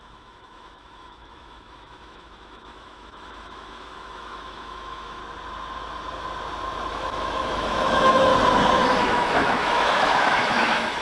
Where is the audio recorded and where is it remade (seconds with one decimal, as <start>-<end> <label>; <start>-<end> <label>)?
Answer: 0.0-5.2 remade; 5.2-6.9 recorded; 6.9-8.3 remade; 8.3-9.0 recorded; 9.0-11.0 remade